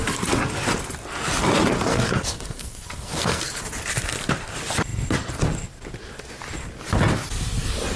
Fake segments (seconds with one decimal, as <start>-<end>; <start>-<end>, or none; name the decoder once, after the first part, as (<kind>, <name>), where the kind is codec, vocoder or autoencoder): 1.9-3.6 (codec, SNAC)